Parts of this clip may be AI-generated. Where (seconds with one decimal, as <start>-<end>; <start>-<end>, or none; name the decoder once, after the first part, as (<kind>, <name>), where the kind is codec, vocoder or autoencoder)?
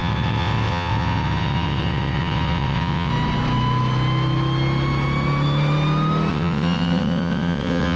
0.0-3.1 (vocoder, WaveNeXt); 6.3-8.0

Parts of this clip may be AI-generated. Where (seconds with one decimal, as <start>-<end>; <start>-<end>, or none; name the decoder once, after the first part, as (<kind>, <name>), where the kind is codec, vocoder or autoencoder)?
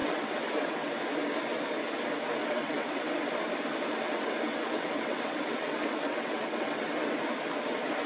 0.0-0.9 (vocoder, WaveNeXt); 2.4-3.1; 3.9-7.2